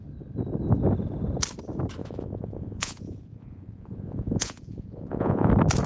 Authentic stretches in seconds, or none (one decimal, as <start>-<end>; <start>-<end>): 0.0-2.0; 5.5-5.9